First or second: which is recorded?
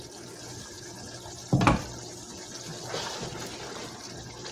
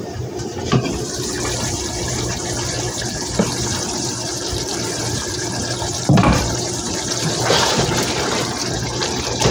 first